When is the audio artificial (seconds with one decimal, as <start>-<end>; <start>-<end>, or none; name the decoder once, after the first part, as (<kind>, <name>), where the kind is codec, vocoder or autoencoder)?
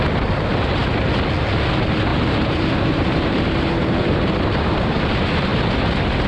2.1-5.0 (vocoder, BigVGAN v2)